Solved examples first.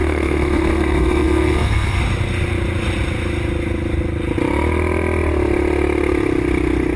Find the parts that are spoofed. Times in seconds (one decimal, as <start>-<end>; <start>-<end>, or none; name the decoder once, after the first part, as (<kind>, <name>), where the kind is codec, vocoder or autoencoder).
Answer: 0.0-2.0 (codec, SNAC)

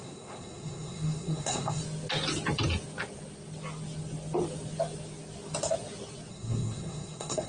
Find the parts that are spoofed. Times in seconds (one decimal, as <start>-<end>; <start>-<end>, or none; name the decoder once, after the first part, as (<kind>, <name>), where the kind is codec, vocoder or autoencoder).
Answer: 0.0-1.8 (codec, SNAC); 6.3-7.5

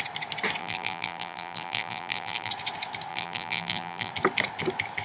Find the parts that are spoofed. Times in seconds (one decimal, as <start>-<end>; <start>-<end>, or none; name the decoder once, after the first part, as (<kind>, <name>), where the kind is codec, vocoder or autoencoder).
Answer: 0.6-2.5 (vocoder, BigVGAN v2); 3.1-4.1

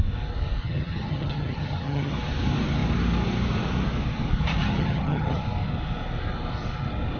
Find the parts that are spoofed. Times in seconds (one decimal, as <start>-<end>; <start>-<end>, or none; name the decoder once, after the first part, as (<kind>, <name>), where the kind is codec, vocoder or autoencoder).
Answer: 0.6-2.1 (vocoder, HiFi-GAN); 4.6-5.4

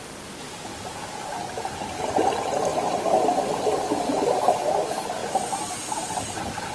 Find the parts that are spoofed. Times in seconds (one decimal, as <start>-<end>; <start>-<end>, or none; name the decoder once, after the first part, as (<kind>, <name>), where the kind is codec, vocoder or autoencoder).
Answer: 0.7-1.4 (vocoder, BigVGAN v2); 2.7-4.4

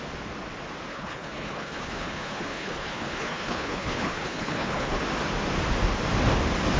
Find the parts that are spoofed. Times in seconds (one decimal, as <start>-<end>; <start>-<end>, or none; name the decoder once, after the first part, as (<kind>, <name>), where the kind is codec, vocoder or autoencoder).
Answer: 0.9-5.0 (codec, HILCodec)

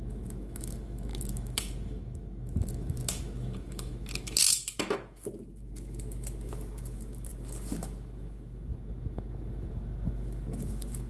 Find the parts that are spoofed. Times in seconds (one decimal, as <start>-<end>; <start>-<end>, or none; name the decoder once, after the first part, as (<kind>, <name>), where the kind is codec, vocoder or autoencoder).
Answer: 0.0-11.1 (autoencoder, DAC-VAE)